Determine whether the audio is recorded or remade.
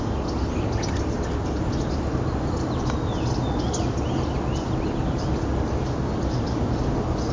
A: recorded